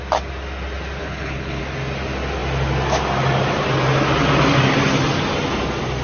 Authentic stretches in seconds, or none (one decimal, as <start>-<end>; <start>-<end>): 0.0-1.0; 1.6-6.0